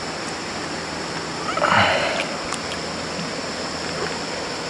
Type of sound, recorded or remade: recorded